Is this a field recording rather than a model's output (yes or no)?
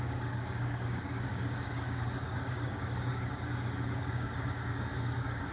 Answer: no